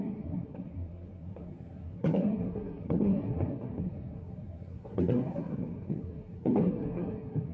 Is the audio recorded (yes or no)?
no